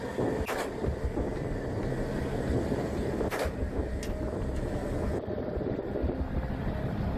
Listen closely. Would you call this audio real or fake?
real